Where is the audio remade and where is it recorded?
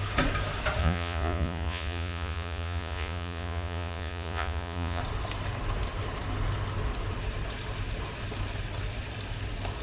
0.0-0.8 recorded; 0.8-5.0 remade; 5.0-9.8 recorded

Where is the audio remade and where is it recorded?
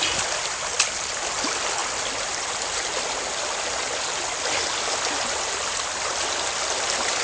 0.0-7.2 recorded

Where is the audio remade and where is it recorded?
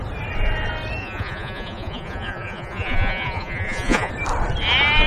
0.0-1.0 recorded; 1.0-4.1 remade; 4.1-5.1 recorded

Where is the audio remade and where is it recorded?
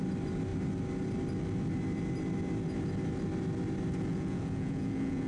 0.0-4.1 recorded; 4.1-5.3 remade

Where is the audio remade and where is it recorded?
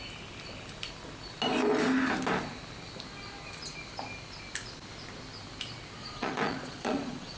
0.0-6.0 recorded; 6.0-7.4 remade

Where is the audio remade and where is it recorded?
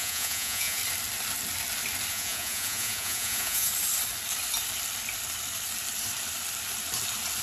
0.0-0.8 remade; 0.8-2.1 recorded; 2.1-3.7 remade; 3.7-7.4 recorded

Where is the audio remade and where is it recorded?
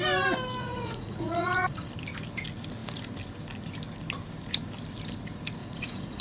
0.0-0.6 recorded; 0.6-1.9 remade; 1.9-5.6 recorded; 5.6-6.2 remade